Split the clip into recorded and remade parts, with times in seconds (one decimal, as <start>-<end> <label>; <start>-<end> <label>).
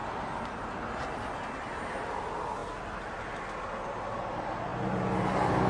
0.0-5.7 recorded